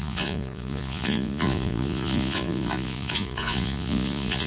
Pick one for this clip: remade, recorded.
remade